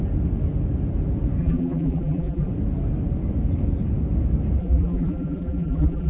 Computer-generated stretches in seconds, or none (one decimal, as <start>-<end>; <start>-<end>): 1.4-2.5; 4.6-6.1